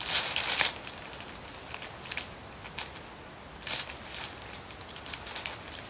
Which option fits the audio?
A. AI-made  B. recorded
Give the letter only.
B